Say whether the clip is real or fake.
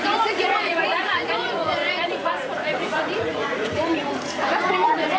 fake